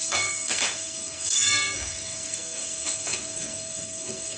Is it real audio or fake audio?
fake